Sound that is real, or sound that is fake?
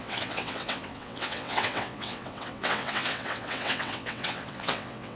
fake